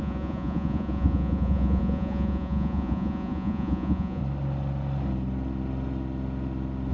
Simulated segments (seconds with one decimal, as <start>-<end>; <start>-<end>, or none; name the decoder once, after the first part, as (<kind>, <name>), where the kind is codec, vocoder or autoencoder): 0.0-4.2 (vocoder, Vocos)